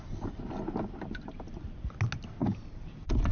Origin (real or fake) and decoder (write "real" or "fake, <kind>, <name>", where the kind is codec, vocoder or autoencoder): real